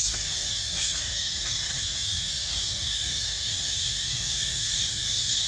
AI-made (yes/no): yes